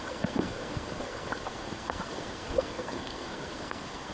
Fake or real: fake